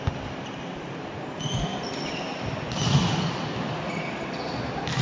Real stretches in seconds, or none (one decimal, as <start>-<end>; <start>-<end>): 0.0-1.7; 2.4-5.0